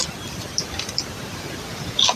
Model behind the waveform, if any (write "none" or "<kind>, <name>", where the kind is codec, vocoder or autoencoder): none